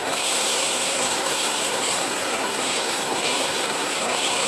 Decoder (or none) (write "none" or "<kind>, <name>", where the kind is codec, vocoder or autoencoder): codec, SNAC